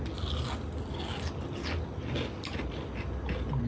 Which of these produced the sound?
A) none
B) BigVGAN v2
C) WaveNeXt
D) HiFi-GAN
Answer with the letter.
A